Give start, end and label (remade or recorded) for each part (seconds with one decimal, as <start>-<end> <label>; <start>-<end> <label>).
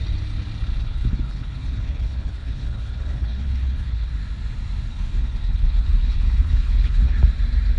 0.0-0.8 recorded; 0.8-4.1 remade; 4.1-4.9 recorded; 4.9-7.2 remade; 7.2-7.8 recorded